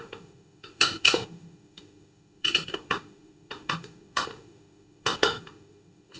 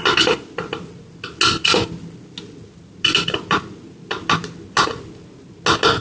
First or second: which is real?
second